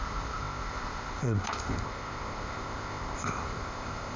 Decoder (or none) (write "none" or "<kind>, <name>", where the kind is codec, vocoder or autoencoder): codec, ZipCodec